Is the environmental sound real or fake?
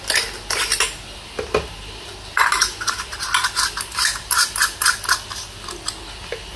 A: real